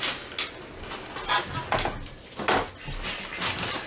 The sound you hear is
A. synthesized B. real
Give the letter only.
B